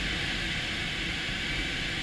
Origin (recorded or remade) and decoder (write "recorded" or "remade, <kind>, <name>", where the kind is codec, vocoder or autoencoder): recorded